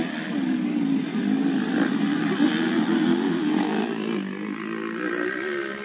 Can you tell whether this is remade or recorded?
recorded